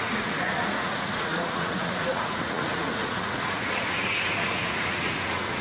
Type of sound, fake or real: fake